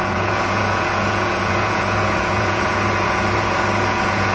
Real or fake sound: fake